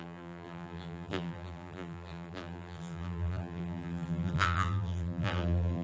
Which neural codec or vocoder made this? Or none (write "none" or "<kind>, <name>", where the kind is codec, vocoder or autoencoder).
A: vocoder, BigVGAN v2